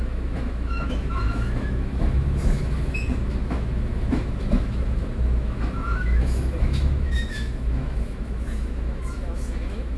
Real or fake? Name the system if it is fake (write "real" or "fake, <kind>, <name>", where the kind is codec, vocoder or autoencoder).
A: fake, autoencoder, DAC-VAE